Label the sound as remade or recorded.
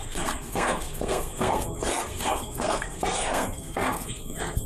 remade